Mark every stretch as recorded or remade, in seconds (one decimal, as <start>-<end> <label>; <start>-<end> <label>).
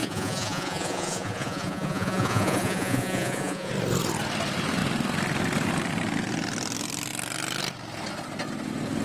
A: 0.0-3.7 remade; 3.7-9.0 recorded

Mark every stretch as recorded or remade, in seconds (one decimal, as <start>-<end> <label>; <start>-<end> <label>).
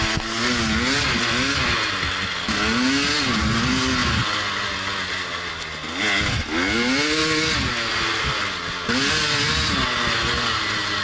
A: 0.0-11.0 recorded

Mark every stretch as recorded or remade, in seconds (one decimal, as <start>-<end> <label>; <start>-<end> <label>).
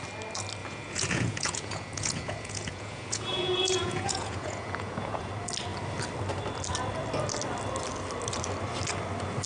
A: 0.0-0.6 recorded; 0.6-5.3 remade; 5.3-9.5 recorded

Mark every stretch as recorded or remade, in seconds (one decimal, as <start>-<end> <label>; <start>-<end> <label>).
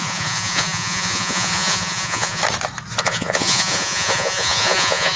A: 0.0-2.4 remade; 2.4-3.0 recorded; 3.0-5.2 remade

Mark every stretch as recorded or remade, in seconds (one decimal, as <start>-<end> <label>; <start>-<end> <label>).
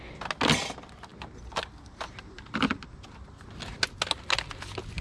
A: 0.0-5.0 recorded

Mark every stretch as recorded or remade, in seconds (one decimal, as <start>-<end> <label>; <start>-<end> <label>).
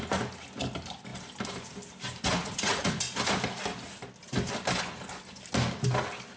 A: 0.0-2.4 recorded; 2.4-3.0 remade; 3.0-6.4 recorded